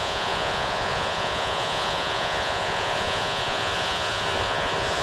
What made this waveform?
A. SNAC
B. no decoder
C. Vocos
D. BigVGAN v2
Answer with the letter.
C